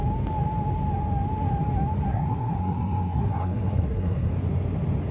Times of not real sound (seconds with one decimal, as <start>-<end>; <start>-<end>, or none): 2.1-4.3